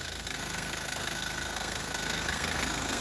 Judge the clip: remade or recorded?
remade